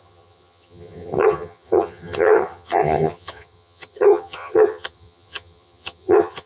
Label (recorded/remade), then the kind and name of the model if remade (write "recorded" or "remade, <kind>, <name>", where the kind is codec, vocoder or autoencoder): remade, vocoder, HiFi-GAN